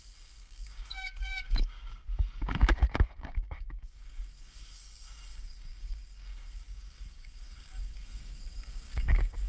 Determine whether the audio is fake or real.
fake